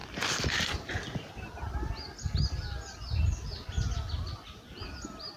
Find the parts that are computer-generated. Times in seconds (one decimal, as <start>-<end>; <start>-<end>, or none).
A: none